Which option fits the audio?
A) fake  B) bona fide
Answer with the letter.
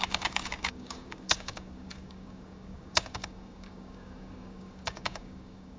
A